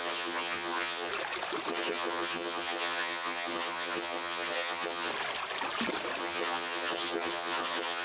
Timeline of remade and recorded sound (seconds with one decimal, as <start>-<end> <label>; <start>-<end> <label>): 0.0-1.1 remade; 1.1-1.7 recorded; 1.7-5.1 remade; 5.1-6.2 recorded; 6.2-8.0 remade